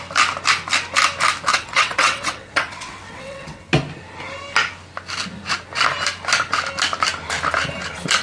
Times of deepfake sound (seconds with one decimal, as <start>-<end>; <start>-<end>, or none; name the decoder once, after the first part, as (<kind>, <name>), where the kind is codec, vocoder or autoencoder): 1.5-3.6 (vocoder, WaveNeXt)